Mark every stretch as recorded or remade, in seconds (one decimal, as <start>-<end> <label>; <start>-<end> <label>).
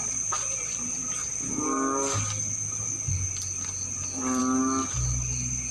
0.0-5.7 recorded